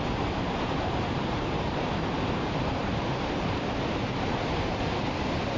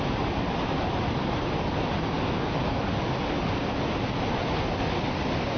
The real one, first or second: second